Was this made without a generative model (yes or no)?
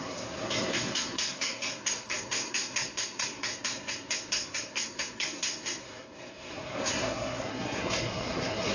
no